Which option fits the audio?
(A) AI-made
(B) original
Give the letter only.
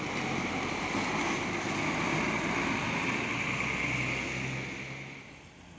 B